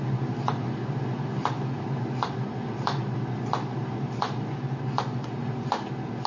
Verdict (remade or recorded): recorded